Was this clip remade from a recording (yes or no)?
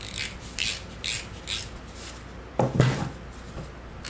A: no